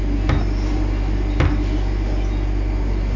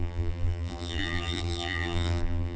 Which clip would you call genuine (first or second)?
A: first